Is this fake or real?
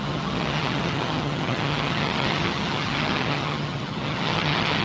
fake